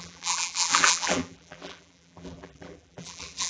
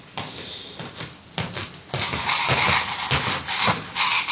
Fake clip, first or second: first